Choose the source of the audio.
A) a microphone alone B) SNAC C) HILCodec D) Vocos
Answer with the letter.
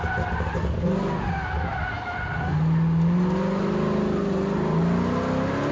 A